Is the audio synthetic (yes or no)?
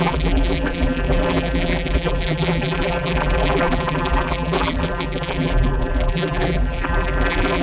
yes